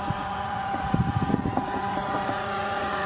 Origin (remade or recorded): remade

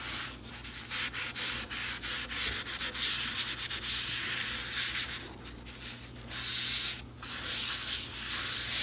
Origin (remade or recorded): recorded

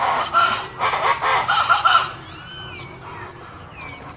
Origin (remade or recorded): recorded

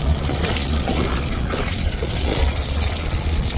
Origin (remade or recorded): remade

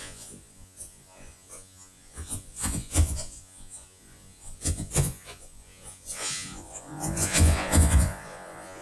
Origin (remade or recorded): remade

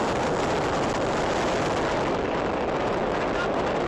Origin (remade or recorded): recorded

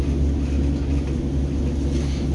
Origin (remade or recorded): recorded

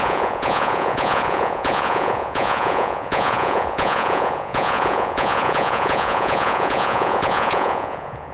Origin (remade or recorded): remade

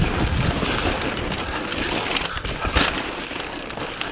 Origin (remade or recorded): recorded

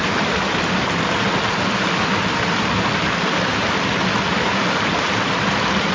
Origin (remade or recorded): recorded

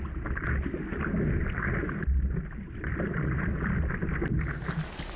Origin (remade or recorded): recorded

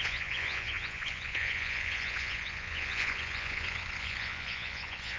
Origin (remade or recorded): remade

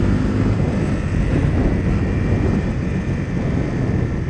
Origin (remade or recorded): recorded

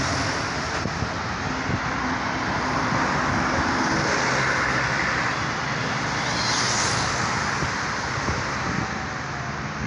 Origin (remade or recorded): recorded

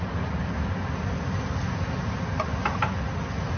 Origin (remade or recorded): recorded